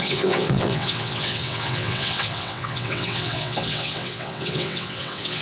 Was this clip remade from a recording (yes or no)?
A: yes